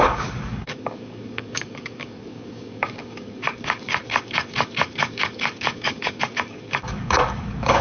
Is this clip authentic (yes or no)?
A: no